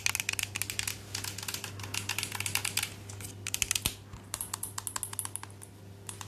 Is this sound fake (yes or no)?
no